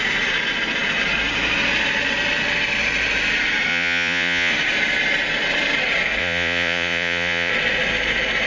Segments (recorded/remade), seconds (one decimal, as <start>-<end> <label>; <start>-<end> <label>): 0.0-3.7 recorded; 3.7-4.5 remade; 4.5-6.2 recorded; 6.2-7.5 remade; 7.5-8.5 recorded